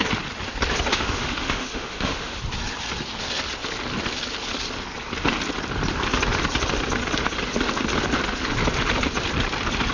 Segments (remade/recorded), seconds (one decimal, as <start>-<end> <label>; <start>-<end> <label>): 0.0-0.9 recorded; 0.9-2.4 remade; 2.4-9.9 recorded